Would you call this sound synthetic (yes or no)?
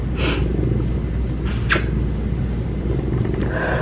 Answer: no